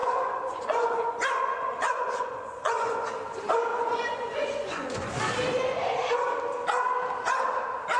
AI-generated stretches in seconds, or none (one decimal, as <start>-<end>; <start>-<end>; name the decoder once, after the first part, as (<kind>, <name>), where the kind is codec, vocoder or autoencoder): 0.0-3.1 (vocoder, Vocos); 3.7-5.1